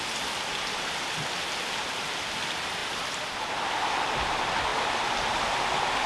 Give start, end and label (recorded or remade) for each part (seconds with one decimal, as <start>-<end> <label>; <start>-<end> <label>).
0.0-6.1 recorded